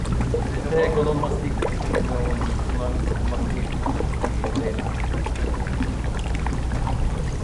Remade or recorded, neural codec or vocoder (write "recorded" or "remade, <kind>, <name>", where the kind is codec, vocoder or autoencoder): recorded